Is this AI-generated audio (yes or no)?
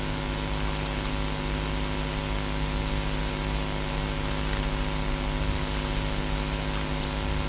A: no